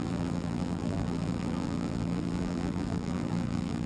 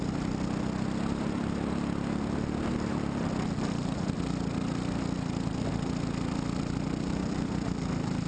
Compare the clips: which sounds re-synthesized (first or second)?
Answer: first